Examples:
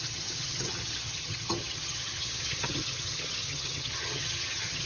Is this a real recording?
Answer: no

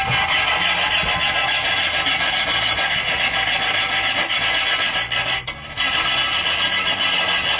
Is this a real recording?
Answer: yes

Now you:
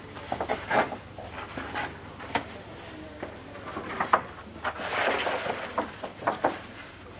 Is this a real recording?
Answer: yes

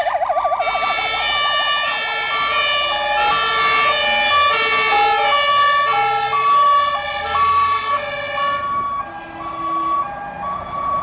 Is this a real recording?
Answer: yes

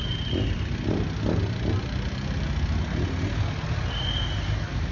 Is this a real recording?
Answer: yes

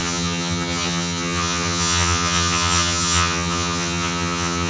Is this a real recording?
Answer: no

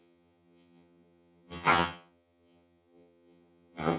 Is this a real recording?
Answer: no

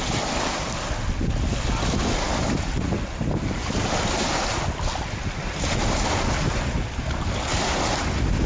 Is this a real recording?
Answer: yes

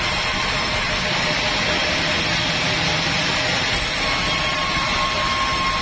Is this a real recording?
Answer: yes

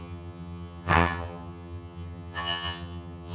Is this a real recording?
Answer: no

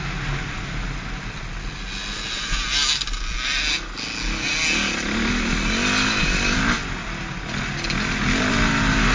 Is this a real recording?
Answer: yes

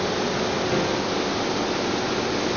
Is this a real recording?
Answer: yes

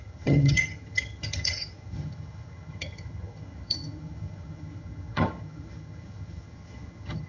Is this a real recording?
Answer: no